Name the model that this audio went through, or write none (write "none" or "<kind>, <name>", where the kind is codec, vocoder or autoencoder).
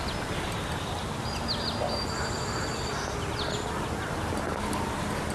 none